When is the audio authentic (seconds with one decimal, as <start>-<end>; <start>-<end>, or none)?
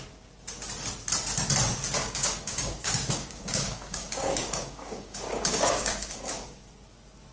0.0-2.0; 6.4-7.3